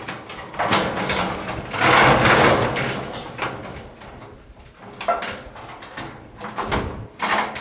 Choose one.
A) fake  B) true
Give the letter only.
B